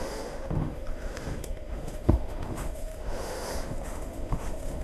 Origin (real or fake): fake